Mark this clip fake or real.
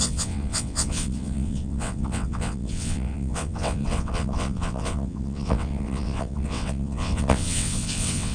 fake